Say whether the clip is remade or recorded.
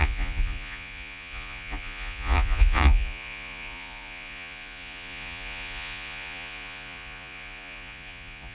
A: remade